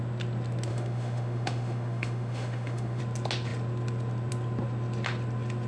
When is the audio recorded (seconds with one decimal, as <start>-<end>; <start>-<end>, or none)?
0.0-0.7; 3.0-5.7